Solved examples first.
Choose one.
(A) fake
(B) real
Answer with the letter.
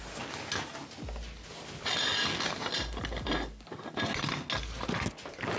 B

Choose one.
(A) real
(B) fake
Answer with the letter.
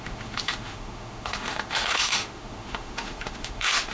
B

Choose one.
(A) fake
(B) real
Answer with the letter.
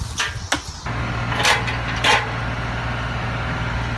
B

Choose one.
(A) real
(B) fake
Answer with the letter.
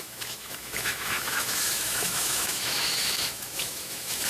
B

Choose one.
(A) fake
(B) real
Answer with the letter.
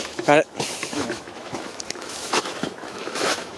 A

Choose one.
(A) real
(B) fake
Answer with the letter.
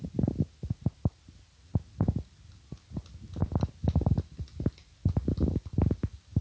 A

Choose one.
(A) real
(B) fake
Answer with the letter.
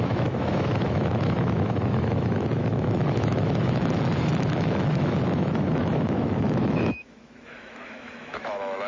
B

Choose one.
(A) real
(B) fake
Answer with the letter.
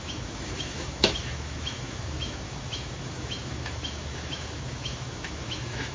B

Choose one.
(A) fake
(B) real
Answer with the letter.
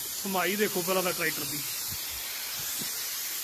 B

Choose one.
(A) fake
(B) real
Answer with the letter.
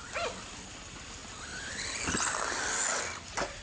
B